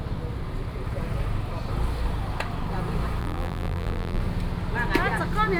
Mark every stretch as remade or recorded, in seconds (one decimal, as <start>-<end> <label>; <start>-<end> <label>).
0.0-3.2 recorded; 3.2-4.2 remade; 4.2-5.6 recorded